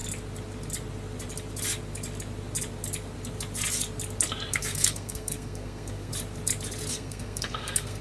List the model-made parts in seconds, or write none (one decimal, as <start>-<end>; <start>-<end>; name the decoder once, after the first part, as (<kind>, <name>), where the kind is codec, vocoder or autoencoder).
4.5-6.1 (codec, SNAC); 6.9-8.0